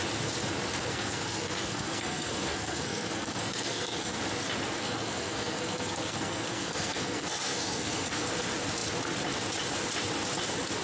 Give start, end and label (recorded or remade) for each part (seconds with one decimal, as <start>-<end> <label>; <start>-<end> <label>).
0.0-0.9 recorded; 0.9-4.2 remade; 4.2-4.8 recorded; 4.8-8.3 remade; 8.3-10.8 recorded